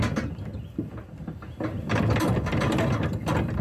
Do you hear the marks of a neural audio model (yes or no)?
no